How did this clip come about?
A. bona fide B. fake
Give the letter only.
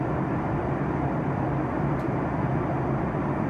A